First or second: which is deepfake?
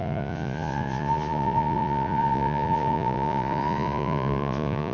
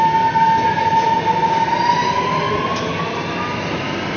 first